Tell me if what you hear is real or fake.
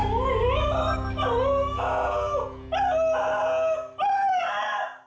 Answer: real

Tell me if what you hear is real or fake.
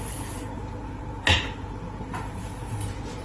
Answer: fake